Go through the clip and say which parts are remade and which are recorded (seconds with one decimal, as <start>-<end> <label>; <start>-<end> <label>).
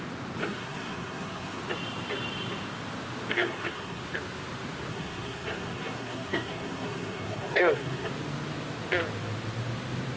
0.0-0.4 recorded; 0.4-1.6 remade; 1.6-3.3 recorded; 3.3-4.0 remade; 4.0-4.9 recorded; 4.9-8.1 remade; 8.1-10.2 recorded